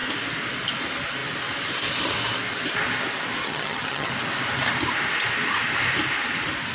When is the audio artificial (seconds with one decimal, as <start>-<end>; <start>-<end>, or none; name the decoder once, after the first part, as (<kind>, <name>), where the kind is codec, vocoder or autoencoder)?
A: 3.4-4.1 (vocoder, HiFi-GAN)